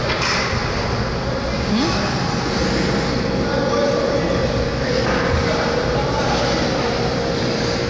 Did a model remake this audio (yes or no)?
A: no